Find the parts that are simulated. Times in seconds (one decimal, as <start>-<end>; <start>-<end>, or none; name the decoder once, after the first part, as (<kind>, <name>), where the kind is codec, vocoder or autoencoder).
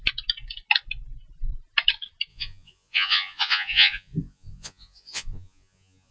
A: 2.3-6.1 (vocoder, Vocos)